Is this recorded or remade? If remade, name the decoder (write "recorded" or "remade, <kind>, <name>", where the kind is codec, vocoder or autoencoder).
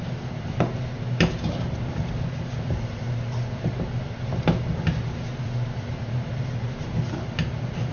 remade, vocoder, BigVGAN v2